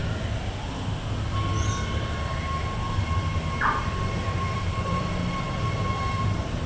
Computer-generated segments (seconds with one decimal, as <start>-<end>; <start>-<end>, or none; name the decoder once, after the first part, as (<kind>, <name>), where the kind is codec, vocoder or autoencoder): 3.8-6.7 (vocoder, BigVGAN v2)